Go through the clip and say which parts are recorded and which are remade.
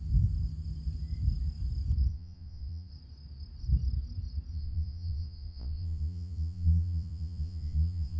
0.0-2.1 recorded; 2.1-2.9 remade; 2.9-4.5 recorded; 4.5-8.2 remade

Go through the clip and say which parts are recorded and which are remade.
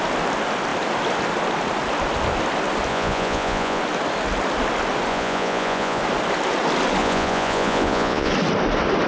0.0-2.9 recorded; 2.9-3.8 remade; 3.8-5.1 recorded; 5.1-6.0 remade; 6.0-7.0 recorded; 7.0-8.3 remade; 8.3-9.1 recorded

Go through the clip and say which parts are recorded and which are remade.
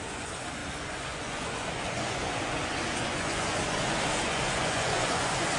0.0-5.6 remade